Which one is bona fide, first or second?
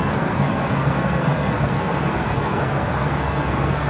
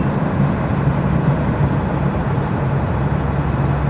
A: second